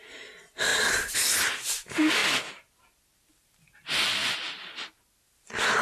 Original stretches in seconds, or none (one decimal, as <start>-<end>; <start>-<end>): 0.0-5.8

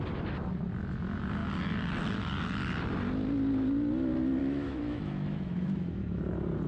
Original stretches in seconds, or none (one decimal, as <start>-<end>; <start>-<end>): 0.0-4.4; 6.2-6.7